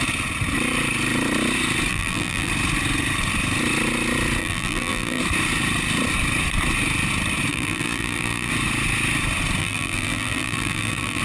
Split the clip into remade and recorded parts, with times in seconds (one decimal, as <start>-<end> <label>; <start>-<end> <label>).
0.0-1.9 recorded; 1.9-2.5 remade; 2.5-4.4 recorded; 4.4-5.2 remade; 5.2-7.5 recorded; 7.5-8.5 remade; 8.5-9.6 recorded; 9.6-11.2 remade